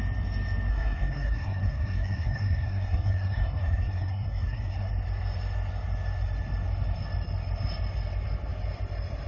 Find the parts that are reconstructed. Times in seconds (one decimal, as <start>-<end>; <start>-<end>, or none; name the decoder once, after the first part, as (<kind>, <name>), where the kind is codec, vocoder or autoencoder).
0.7-4.9 (codec, SNAC)